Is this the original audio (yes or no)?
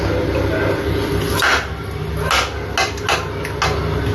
yes